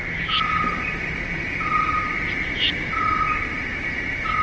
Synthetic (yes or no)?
no